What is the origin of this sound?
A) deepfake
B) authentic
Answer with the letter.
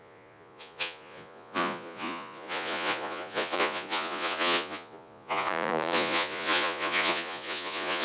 A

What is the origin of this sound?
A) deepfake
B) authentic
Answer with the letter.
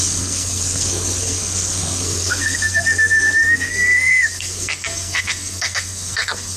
A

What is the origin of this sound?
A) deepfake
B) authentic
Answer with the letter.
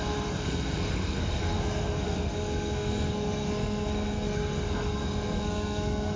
A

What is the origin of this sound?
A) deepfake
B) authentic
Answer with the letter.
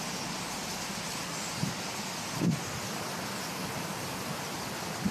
B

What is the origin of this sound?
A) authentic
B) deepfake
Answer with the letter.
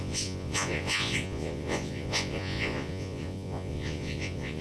B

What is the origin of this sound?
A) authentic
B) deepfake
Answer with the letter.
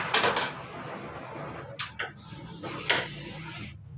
A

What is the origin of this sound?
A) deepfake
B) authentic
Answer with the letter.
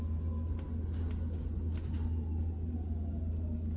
B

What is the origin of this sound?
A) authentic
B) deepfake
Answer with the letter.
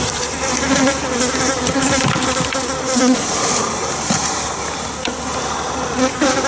A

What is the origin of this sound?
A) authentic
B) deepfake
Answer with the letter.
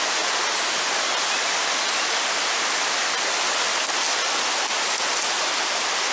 A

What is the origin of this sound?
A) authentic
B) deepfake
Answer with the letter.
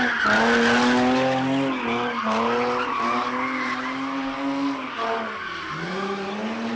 A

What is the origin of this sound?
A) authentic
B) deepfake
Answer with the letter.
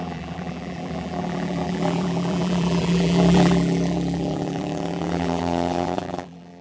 B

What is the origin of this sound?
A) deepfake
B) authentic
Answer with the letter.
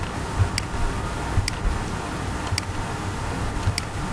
B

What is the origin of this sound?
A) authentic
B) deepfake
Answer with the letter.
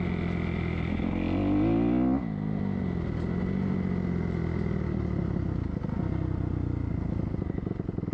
A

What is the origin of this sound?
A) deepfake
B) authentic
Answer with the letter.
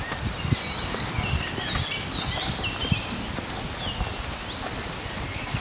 B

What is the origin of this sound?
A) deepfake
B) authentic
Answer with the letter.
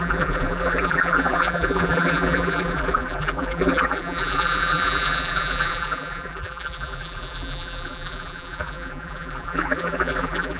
A